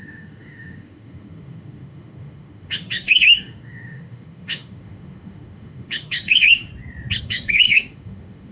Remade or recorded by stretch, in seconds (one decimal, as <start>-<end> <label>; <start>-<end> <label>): 0.0-6.7 remade; 6.7-7.2 recorded; 7.2-8.5 remade